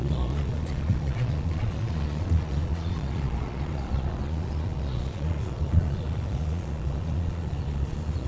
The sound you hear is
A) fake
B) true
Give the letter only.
A